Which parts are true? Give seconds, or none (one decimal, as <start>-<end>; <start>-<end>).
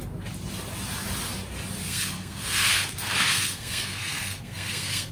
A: 0.0-1.8